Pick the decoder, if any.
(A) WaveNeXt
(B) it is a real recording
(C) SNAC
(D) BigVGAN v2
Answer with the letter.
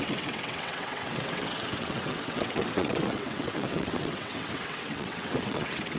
A